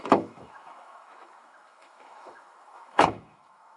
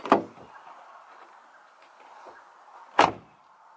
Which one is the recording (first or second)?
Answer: second